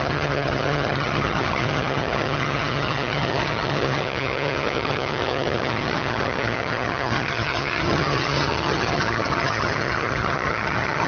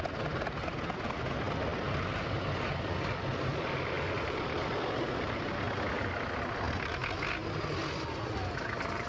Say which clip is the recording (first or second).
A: second